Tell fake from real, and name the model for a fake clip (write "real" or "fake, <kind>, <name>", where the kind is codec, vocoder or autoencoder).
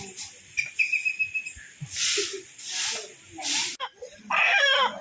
real